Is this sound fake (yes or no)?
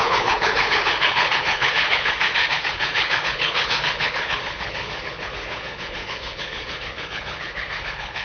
yes